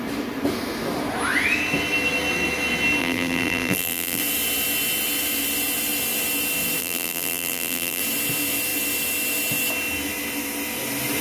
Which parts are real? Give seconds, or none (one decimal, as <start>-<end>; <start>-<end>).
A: 0.0-3.0; 4.2-6.8; 8.0-11.2